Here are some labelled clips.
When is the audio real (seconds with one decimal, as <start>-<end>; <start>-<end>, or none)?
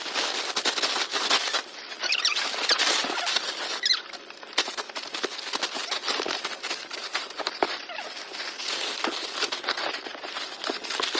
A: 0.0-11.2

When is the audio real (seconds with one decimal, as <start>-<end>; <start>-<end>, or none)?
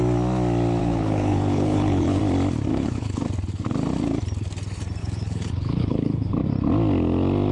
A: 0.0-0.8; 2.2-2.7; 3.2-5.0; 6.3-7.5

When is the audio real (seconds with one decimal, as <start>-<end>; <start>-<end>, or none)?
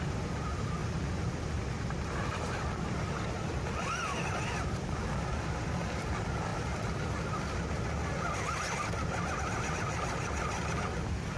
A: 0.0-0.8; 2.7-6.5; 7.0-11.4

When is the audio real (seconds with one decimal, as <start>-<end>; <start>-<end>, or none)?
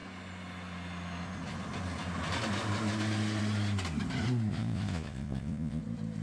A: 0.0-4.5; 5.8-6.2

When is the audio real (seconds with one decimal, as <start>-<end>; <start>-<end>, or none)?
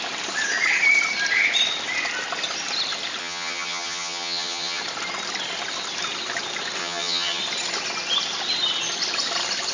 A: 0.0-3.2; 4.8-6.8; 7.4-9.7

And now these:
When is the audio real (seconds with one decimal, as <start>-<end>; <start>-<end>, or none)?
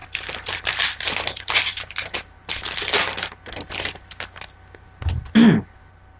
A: 2.4-6.2